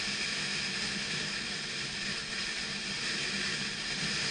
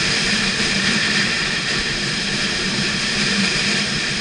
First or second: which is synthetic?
second